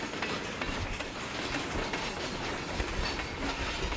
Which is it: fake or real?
real